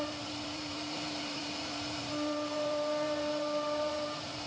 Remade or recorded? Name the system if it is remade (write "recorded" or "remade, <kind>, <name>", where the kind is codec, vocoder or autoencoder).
remade, vocoder, BigVGAN v2